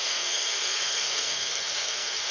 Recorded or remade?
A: remade